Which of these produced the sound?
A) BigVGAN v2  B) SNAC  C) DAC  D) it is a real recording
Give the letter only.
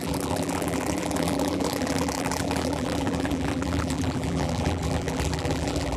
A